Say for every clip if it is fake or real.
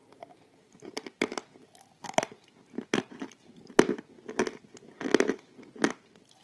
real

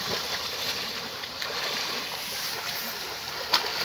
fake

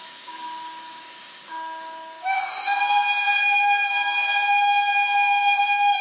fake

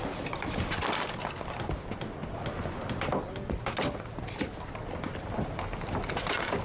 real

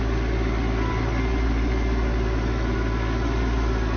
real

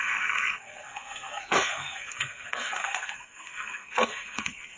fake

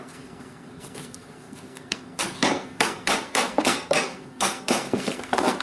fake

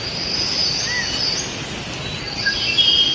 real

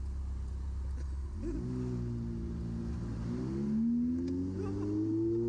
real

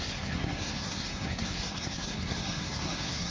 fake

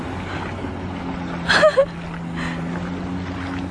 real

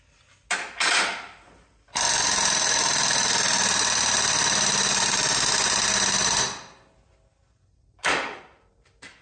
real